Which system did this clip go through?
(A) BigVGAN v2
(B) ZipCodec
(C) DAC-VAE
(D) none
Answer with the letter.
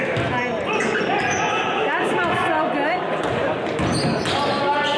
D